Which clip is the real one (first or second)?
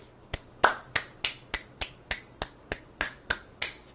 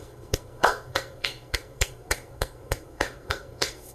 first